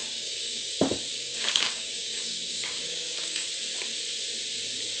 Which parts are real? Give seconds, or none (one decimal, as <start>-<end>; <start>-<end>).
0.7-1.1; 3.5-5.0